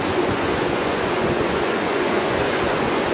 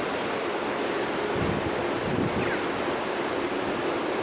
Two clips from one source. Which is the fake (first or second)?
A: first